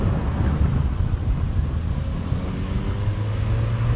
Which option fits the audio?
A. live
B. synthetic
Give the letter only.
A